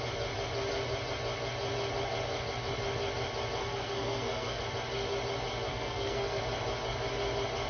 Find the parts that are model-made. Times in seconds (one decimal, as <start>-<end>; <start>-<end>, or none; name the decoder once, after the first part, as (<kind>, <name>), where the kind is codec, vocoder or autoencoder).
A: 3.6-4.6 (codec, SNAC); 5.7-6.4